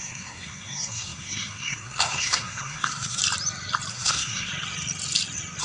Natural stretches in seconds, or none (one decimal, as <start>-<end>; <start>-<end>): 3.2-3.9; 4.5-5.6